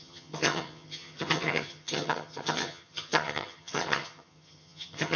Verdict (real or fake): fake